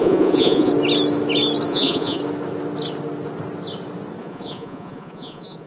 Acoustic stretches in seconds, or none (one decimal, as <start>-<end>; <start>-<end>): 0.7-1.7; 2.2-4.2